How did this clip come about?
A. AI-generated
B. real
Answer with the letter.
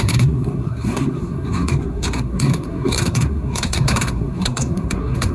A